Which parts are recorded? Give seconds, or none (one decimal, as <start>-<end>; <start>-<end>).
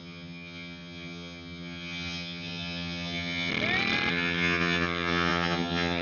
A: 3.5-4.1